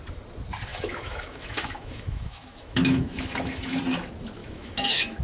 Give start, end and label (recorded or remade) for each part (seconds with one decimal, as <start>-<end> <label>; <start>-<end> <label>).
0.0-0.7 recorded; 0.7-3.8 remade; 3.8-4.4 recorded; 4.4-5.2 remade